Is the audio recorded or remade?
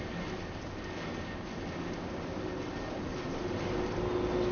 recorded